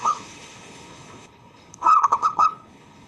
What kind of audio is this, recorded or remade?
remade